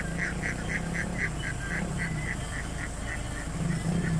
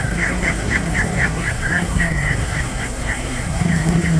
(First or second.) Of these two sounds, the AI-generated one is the second